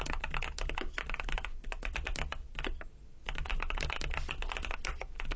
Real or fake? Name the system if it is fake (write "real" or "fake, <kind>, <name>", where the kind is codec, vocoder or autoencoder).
real